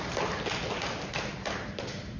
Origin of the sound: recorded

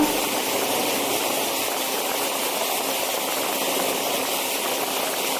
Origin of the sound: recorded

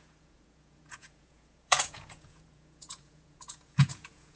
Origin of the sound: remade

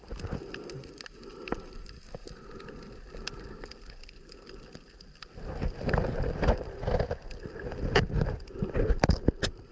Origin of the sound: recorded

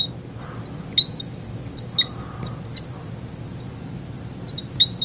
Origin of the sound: recorded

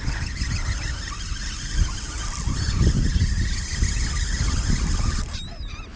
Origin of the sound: recorded